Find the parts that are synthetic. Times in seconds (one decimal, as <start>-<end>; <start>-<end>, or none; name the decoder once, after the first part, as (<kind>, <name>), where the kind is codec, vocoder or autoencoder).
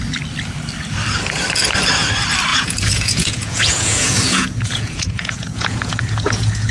2.5-6.7 (vocoder, Vocos)